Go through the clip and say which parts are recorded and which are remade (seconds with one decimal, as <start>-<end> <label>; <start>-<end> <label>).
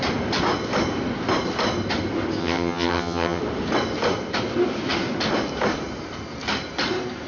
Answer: 0.0-2.4 recorded; 2.4-3.4 remade; 3.4-7.3 recorded